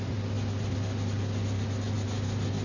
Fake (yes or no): no